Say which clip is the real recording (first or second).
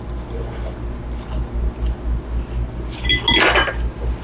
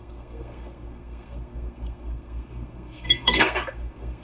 first